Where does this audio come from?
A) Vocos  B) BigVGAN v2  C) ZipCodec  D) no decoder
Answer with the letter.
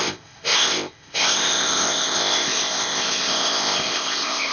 C